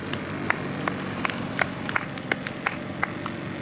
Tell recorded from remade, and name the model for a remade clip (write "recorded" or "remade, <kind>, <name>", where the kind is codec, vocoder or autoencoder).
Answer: recorded